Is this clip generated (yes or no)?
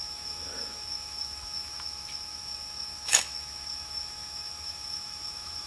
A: yes